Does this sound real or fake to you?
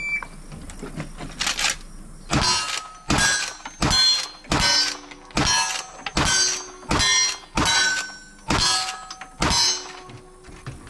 real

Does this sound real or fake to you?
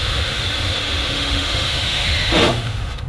fake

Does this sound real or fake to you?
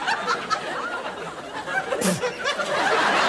real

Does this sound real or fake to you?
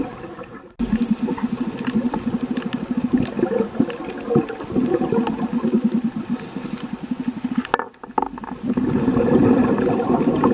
real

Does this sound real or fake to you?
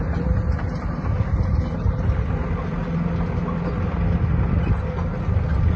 real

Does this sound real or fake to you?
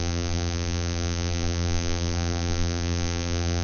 fake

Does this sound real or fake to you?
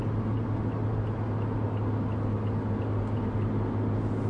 real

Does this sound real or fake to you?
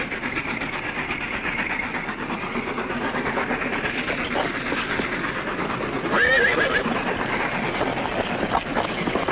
real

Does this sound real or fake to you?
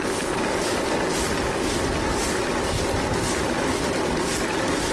real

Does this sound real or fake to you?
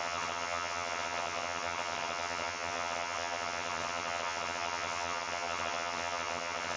fake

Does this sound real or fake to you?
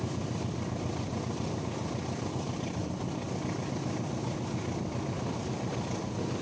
real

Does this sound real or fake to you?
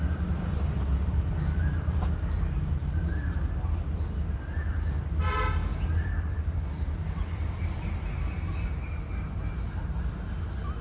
real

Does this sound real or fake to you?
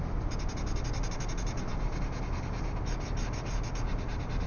real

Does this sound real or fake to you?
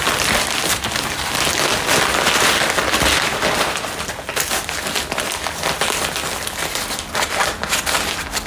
real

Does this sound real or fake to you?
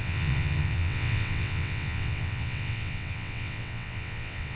fake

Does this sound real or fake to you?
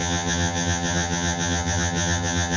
fake